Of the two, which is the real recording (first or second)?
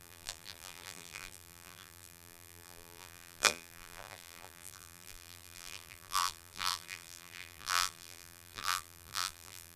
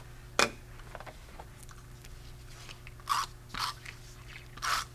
second